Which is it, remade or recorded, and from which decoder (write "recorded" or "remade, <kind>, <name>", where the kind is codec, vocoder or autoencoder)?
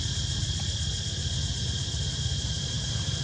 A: recorded